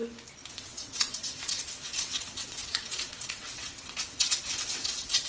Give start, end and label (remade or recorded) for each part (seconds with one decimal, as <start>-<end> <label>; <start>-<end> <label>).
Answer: 0.0-0.5 recorded; 0.5-5.3 remade